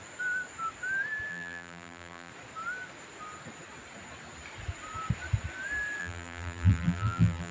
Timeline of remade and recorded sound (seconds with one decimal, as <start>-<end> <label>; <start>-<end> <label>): 0.0-1.3 recorded; 1.3-2.3 remade; 2.3-6.0 recorded; 6.0-7.5 remade